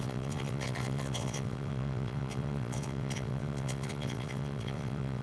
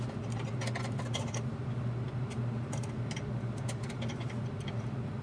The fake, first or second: first